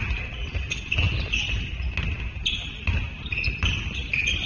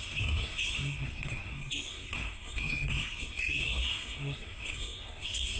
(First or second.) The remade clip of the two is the second